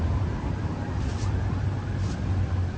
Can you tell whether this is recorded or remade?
recorded